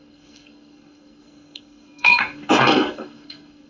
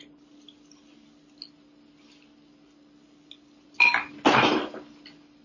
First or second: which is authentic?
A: second